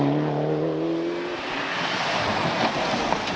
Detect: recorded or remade recorded